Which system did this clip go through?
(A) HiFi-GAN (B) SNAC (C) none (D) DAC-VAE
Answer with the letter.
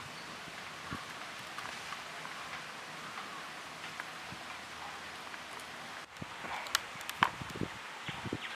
C